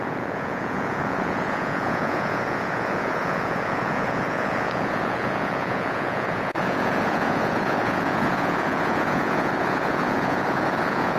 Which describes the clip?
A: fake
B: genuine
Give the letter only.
A